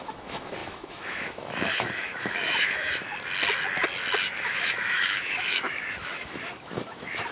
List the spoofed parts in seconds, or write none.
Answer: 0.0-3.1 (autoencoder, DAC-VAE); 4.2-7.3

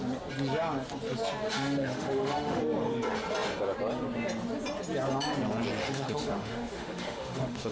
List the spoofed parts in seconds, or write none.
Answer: 1.5-2.6 (autoencoder, DAC-VAE); 5.8-7.7

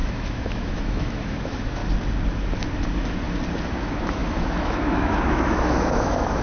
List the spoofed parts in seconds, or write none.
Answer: 0.0-1.8 (autoencoder, DAC-VAE); 3.8-6.4

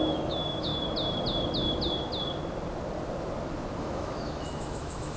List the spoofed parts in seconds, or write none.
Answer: 0.0-0.7 (autoencoder, DAC-VAE); 3.8-5.2

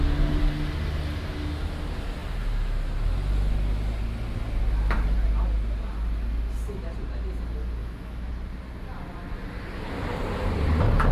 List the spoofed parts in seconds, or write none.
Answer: 7.8-8.3 (autoencoder, DAC-VAE)

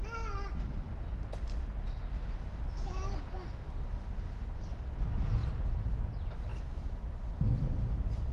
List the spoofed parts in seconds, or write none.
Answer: 6.5-7.1 (autoencoder, DAC-VAE)

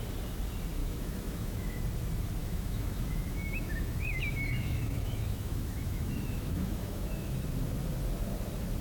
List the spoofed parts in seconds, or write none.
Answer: 0.8-1.8 (autoencoder, DAC-VAE); 2.4-7.3

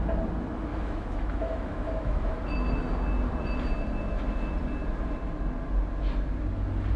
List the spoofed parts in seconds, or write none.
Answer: 0.7-2.3 (autoencoder, DAC-VAE)